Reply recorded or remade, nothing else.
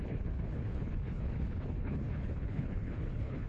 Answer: remade